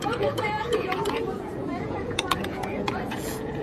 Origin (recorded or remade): remade